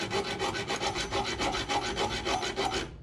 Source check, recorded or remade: recorded